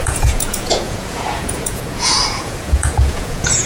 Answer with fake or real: fake